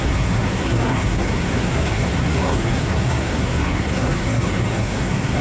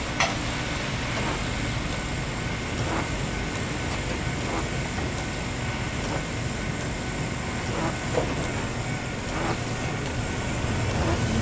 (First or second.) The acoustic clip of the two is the second